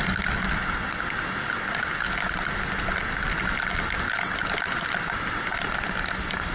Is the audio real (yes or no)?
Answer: yes